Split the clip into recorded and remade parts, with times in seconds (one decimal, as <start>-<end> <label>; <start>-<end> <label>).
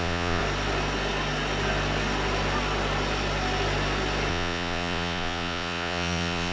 0.0-0.4 remade; 0.4-4.3 recorded; 4.3-6.5 remade